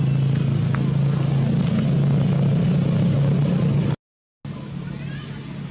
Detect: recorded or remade recorded